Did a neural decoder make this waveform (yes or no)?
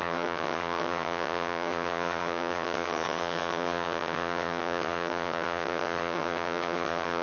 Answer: yes